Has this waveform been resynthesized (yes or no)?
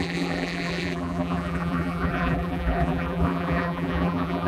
yes